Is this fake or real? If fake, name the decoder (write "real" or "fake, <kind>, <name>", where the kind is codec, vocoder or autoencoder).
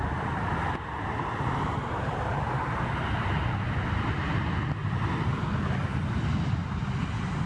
real